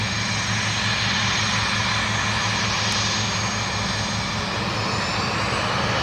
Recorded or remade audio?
recorded